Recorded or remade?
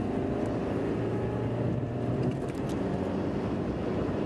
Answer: recorded